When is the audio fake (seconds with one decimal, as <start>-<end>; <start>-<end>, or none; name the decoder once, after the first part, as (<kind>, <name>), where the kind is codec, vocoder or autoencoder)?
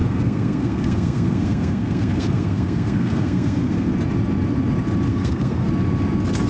0.0-3.9 (codec, SNAC); 5.1-5.7